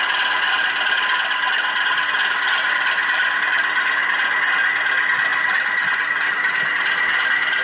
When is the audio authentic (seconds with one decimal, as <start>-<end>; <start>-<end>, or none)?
0.0-7.6